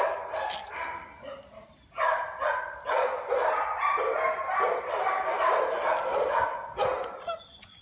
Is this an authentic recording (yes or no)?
yes